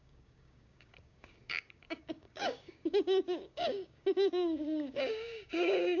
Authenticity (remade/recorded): remade